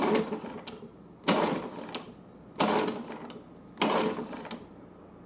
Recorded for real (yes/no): yes